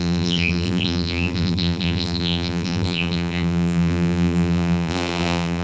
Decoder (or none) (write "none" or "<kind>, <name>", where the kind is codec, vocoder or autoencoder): vocoder, BigVGAN v2